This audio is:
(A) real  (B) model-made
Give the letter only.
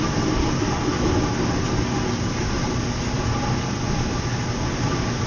A